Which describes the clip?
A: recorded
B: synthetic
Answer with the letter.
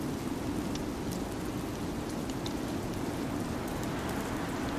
A